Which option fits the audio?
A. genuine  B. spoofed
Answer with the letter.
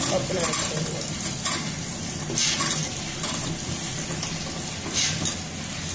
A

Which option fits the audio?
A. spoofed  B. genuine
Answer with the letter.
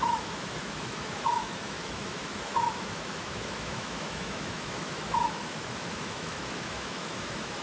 A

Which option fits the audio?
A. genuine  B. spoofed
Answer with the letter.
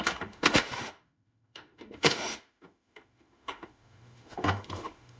B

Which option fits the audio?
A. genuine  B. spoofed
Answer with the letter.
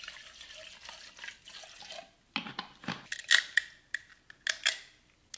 A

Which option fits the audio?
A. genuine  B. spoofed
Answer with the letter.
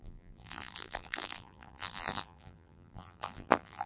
B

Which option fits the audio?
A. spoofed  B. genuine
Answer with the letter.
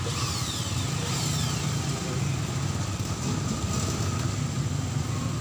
B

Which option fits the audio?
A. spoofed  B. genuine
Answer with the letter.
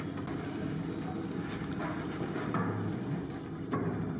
B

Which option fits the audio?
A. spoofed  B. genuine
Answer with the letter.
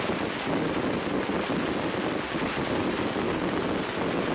B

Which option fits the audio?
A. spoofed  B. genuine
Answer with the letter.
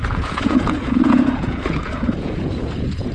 A